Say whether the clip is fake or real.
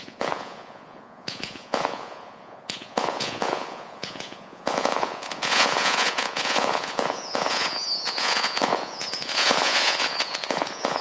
fake